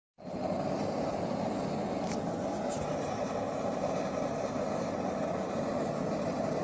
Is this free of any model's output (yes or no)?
yes